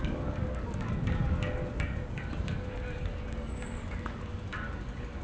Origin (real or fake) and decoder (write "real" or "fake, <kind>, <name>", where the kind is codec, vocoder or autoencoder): fake, codec, DAC